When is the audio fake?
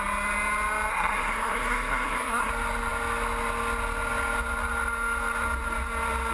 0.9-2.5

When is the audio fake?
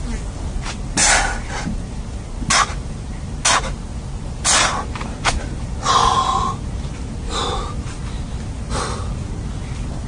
none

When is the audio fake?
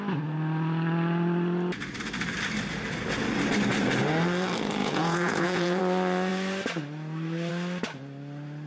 4.8-5.8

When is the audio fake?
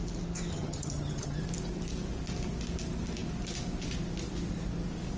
0.5-1.4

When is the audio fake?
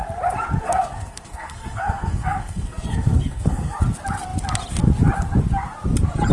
0.6-3.8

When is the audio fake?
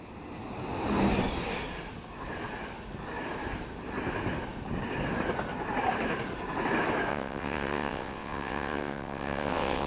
7.1-9.9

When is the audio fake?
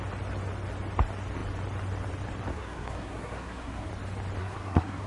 2.5-3.9; 4.4-5.1